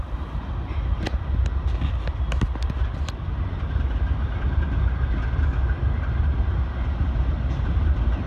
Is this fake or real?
real